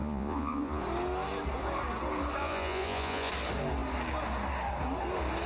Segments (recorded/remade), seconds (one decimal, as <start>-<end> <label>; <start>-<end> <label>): 0.0-0.8 remade; 0.8-2.4 recorded; 2.4-3.3 remade; 3.3-5.5 recorded